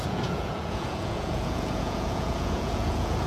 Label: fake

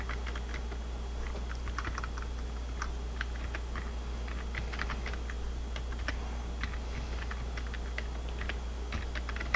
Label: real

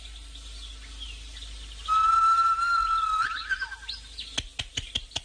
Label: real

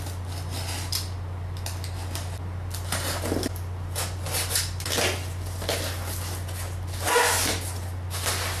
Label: real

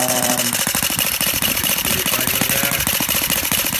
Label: fake